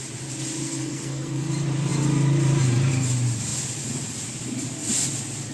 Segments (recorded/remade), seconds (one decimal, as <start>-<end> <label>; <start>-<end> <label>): 0.0-0.6 recorded; 0.6-1.5 remade; 1.5-5.5 recorded